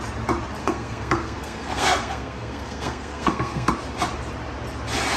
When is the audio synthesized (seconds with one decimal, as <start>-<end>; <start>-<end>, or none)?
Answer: 0.6-3.7